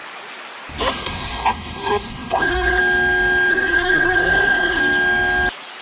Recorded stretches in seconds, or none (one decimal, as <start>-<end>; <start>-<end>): 0.0-0.9; 2.8-3.5; 4.8-5.8